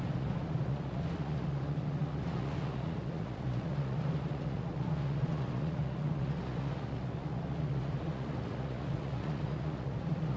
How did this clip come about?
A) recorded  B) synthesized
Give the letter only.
B